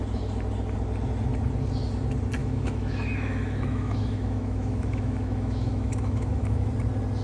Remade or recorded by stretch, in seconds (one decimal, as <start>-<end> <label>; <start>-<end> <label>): 0.0-2.4 recorded; 2.4-6.7 remade; 6.7-7.2 recorded